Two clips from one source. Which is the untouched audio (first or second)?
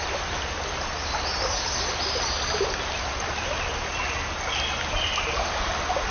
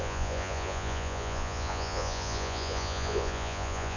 first